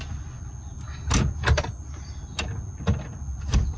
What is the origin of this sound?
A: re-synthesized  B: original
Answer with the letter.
B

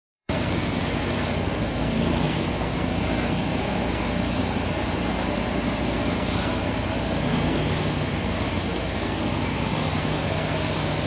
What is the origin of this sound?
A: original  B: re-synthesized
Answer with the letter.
B